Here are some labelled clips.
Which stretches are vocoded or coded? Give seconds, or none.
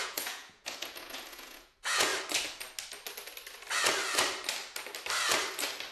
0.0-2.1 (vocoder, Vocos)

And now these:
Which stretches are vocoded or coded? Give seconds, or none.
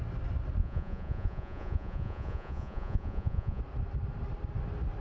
0.6-3.6 (vocoder, Vocos)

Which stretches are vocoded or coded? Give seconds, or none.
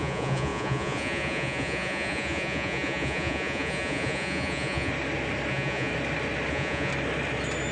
0.0-4.9 (vocoder, Vocos); 5.5-5.9; 6.5-6.9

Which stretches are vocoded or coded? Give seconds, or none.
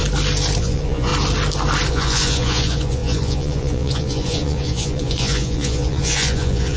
0.6-1.1 (vocoder, Vocos); 1.9-6.8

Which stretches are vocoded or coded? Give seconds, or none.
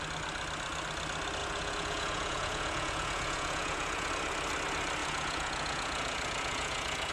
1.4-4.1 (vocoder, Vocos); 5.0-7.1